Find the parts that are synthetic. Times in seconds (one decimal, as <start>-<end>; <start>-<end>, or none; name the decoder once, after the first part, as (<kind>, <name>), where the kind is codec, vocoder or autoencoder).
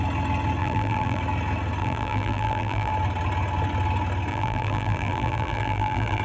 0.6-1.2 (vocoder, BigVGAN v2); 1.8-2.9; 4.3-6.2